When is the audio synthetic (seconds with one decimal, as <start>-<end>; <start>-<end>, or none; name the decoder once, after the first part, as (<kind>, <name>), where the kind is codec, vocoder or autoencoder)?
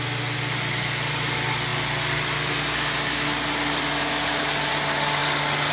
none